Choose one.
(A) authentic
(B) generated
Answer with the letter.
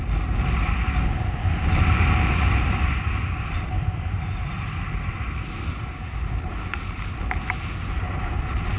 A